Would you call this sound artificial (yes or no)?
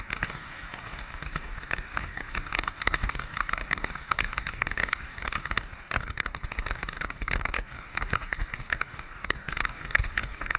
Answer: yes